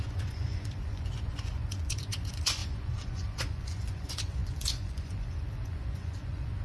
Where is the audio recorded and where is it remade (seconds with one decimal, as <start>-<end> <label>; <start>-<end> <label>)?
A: 0.0-6.6 remade